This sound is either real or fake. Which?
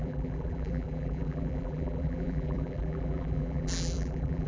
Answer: fake